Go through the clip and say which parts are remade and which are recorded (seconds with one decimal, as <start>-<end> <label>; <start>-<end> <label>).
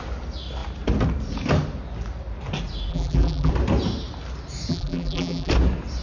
0.0-2.9 recorded; 2.9-3.5 remade; 3.5-4.7 recorded; 4.7-5.5 remade; 5.5-6.0 recorded